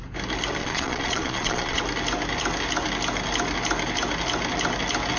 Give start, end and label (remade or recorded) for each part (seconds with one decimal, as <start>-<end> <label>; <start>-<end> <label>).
0.0-0.6 recorded; 0.6-1.8 remade; 1.8-5.2 recorded